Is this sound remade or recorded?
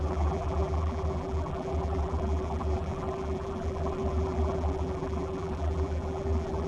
remade